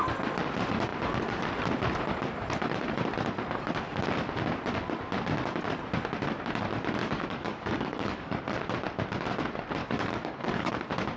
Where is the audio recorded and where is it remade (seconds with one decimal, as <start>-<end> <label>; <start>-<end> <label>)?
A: 0.0-7.0 recorded; 7.0-8.4 remade; 8.4-9.8 recorded; 9.8-10.7 remade; 10.7-11.2 recorded